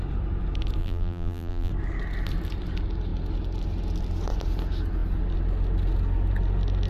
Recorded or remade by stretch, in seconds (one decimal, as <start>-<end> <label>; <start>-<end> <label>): 0.0-0.8 recorded; 0.8-1.7 remade; 1.7-6.9 recorded